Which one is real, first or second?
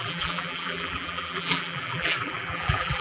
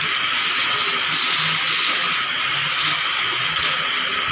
second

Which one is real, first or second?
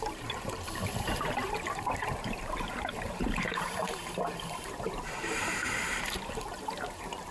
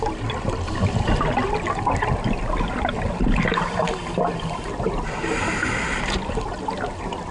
second